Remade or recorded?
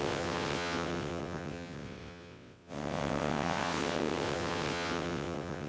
remade